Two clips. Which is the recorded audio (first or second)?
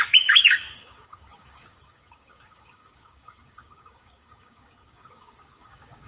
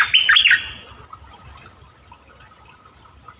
second